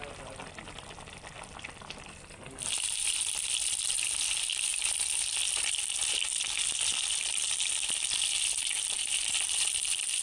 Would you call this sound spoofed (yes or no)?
yes